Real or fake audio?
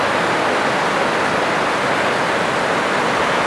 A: real